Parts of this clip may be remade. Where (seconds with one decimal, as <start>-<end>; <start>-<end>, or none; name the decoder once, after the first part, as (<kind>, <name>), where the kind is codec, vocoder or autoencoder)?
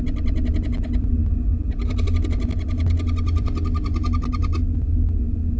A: none